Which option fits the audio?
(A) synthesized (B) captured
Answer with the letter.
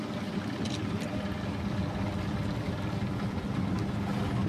B